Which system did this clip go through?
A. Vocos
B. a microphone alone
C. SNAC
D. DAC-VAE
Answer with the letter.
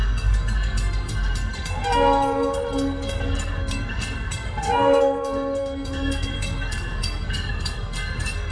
C